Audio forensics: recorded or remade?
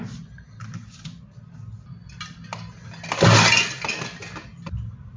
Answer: recorded